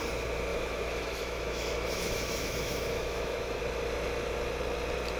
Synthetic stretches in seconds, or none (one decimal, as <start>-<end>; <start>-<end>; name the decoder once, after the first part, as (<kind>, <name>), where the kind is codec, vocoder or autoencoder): 0.5-3.6 (autoencoder, DAC-VAE)